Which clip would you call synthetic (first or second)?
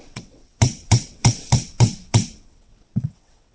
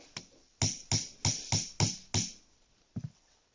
first